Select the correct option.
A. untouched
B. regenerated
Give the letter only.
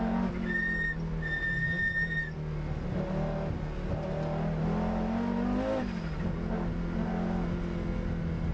A